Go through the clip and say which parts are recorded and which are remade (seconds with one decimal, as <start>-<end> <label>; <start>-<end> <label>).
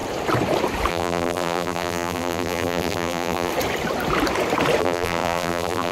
0.0-0.9 recorded; 0.9-3.5 remade; 3.5-4.8 recorded; 4.8-5.9 remade